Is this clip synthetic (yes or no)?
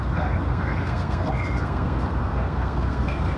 yes